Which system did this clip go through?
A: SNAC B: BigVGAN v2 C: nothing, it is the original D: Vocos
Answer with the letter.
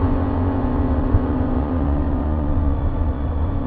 D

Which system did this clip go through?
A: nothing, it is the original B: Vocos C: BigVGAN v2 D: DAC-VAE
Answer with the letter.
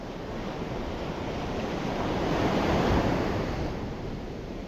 C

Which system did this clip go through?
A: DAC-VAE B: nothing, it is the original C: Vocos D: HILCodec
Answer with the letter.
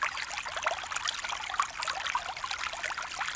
B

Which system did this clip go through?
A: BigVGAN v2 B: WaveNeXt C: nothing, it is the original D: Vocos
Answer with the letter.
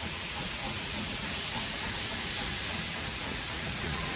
D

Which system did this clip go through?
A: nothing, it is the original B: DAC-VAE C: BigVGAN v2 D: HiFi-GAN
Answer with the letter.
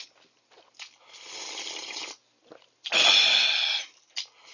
A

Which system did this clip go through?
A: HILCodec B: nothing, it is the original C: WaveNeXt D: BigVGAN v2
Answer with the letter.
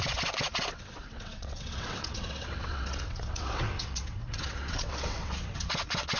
C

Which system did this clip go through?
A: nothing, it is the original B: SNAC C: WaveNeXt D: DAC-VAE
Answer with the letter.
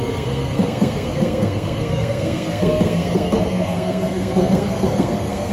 B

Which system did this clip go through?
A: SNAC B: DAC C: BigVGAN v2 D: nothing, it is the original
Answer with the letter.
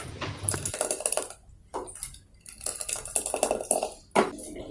D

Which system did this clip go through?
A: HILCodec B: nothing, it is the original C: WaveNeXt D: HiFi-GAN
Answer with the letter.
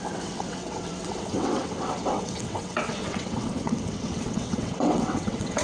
C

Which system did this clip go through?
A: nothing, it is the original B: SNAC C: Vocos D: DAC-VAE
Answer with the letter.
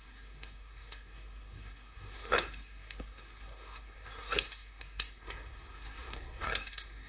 B